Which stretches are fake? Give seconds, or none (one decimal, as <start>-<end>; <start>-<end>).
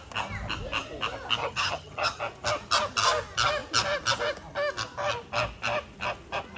1.4-2.2